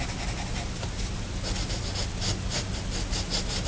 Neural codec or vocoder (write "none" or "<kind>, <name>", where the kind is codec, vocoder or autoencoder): none